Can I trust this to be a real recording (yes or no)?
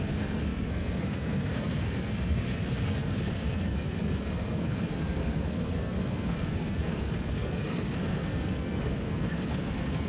no